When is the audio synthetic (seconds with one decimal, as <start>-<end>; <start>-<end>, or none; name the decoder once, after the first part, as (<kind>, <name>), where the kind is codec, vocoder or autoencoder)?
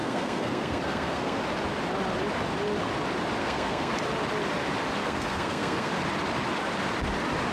0.0-1.4 (codec, SNAC); 3.4-3.9; 5.0-5.9